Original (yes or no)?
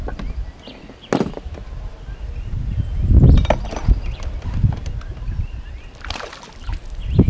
yes